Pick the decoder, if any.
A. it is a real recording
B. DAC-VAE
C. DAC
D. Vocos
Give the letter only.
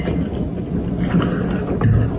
A